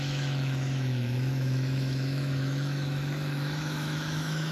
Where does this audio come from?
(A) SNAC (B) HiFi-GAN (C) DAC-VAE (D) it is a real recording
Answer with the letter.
C